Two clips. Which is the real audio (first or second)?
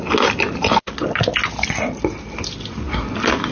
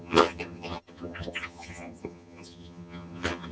first